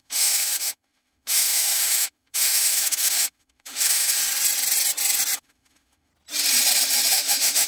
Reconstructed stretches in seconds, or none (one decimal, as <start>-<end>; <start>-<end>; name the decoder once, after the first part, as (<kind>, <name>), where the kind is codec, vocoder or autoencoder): 0.0-4.2 (autoencoder, DAC-VAE); 5.4-6.1; 7.1-7.7